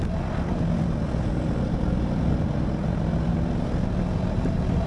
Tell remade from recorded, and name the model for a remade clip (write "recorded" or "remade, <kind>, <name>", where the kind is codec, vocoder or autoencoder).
remade, vocoder, BigVGAN v2